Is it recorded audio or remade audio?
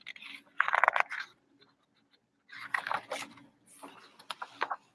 recorded